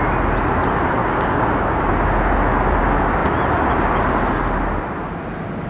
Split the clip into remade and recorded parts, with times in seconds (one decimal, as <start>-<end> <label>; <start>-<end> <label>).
0.0-1.0 recorded; 1.0-1.9 remade; 1.9-5.7 recorded